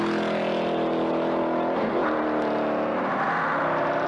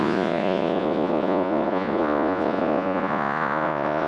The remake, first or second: second